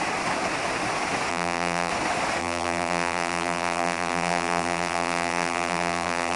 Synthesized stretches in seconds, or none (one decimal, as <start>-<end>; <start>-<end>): 1.3-1.9; 2.4-6.4